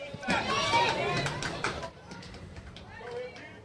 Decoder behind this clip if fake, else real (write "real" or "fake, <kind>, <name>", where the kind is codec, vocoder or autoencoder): fake, vocoder, BigVGAN v2